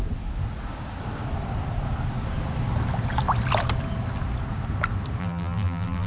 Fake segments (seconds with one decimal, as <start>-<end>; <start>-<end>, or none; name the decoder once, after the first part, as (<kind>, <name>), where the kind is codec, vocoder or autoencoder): 5.2-6.1 (vocoder, BigVGAN v2)